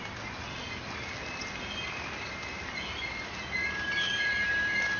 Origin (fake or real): real